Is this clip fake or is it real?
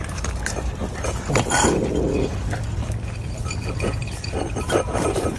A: fake